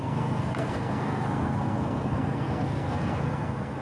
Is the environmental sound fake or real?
fake